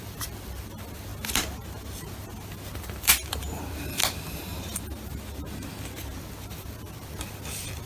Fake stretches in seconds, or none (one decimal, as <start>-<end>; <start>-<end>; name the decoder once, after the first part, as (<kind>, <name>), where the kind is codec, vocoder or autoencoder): 0.0-1.1 (vocoder, BigVGAN v2); 2.8-4.5; 6.2-7.9